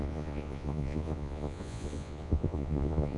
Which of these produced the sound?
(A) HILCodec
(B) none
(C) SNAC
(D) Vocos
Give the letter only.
D